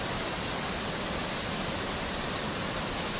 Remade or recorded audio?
remade